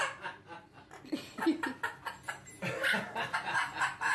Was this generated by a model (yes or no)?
no